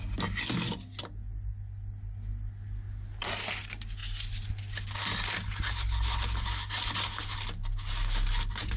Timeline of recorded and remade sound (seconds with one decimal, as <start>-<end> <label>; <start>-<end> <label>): 0.0-8.8 recorded